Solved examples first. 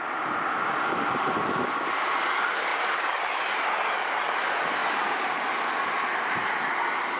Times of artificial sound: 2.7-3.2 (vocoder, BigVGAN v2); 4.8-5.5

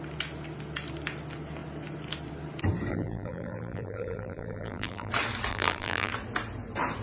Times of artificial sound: 2.9-5.1 (vocoder, BigVGAN v2); 5.5-6.1

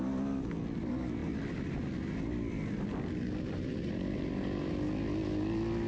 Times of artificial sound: 1.2-4.7 (vocoder, BigVGAN v2)

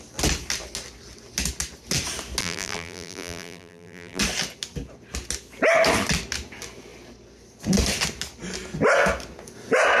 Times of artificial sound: 2.4-4.2 (vocoder, BigVGAN v2)

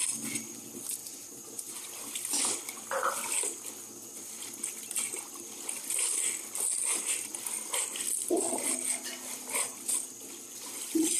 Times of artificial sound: 1.0-1.9 (vocoder, BigVGAN v2)

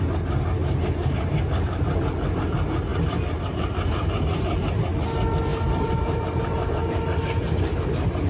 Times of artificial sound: 5.5-6.7 (vocoder, BigVGAN v2)

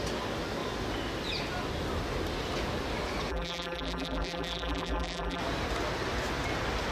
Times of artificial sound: 3.3-5.4 (vocoder, BigVGAN v2)